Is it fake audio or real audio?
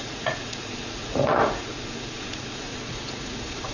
fake